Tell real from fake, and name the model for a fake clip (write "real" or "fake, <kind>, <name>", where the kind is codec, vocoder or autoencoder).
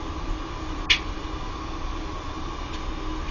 real